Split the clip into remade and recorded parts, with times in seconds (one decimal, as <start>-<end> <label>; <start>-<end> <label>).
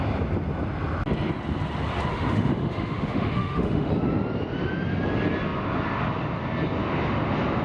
0.0-2.1 recorded; 2.1-3.9 remade; 3.9-7.6 recorded